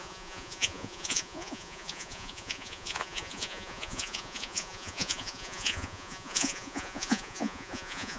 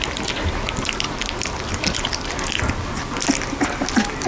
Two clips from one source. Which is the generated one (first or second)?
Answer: first